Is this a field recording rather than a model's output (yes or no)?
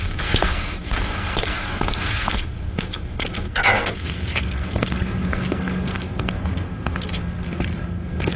no